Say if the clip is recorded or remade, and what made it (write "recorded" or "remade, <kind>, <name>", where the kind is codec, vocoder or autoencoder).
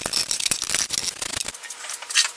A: recorded